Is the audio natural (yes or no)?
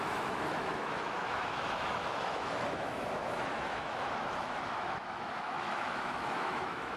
no